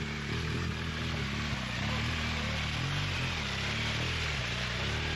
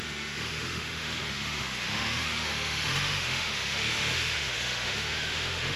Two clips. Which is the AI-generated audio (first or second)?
second